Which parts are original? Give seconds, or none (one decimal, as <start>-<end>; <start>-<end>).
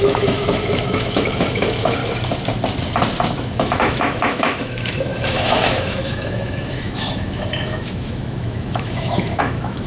2.0-3.3